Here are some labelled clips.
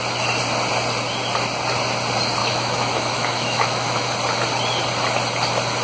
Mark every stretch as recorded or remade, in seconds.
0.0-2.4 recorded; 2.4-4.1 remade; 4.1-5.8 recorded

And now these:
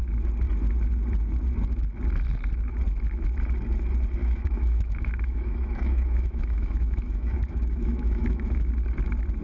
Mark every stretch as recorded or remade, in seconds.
0.0-4.2 recorded; 4.2-8.7 remade; 8.7-9.4 recorded